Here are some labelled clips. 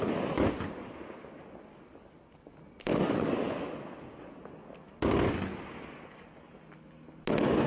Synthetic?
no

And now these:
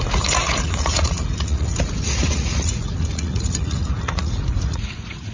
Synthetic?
yes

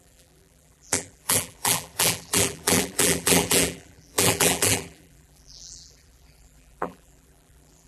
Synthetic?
yes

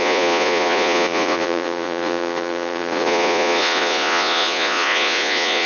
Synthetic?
yes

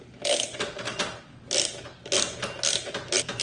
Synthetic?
no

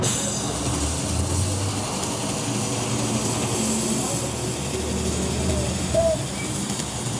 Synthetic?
no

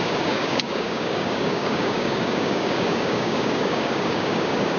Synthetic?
yes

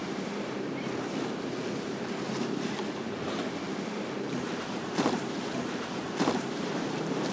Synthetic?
yes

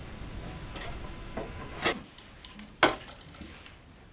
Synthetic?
no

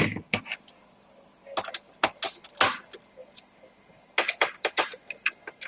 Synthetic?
no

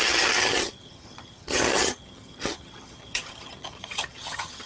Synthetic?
yes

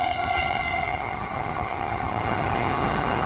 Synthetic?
yes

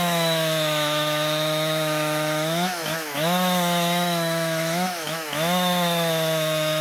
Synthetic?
yes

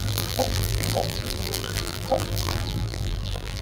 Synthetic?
yes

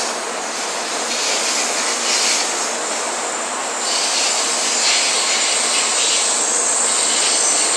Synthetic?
no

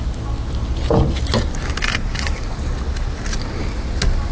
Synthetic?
no